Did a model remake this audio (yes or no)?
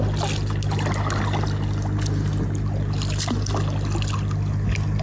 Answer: no